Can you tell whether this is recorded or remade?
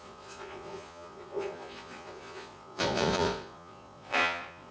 remade